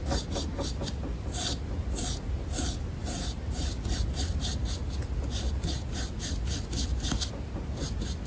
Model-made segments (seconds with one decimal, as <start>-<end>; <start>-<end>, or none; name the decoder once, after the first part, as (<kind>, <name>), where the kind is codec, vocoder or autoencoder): none

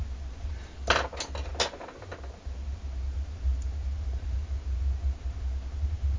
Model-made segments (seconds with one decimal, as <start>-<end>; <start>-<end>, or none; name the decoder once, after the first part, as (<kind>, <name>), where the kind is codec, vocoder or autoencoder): none

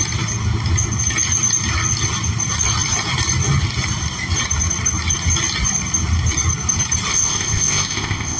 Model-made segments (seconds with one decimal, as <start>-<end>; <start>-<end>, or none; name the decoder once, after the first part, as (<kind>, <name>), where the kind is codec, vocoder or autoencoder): 7.1-8.4 (codec, ZipCodec)